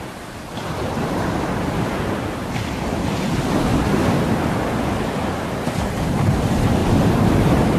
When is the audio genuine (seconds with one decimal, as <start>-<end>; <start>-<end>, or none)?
0.0-7.8